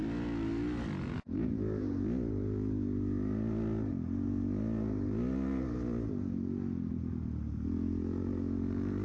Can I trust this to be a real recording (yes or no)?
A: yes